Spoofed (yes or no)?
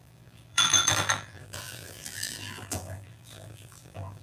yes